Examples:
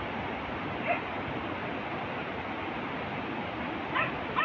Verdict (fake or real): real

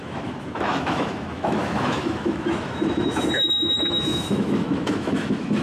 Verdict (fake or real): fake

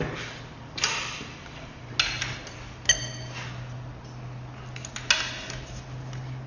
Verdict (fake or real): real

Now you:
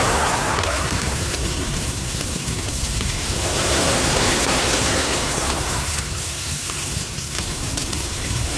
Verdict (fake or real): fake